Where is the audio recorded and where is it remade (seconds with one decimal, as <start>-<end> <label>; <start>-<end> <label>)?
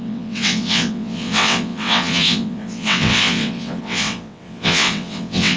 0.0-5.6 remade